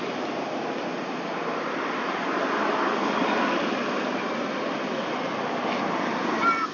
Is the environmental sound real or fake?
real